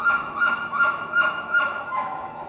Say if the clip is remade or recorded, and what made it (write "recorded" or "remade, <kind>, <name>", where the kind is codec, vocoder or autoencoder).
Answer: remade, autoencoder, DAC-VAE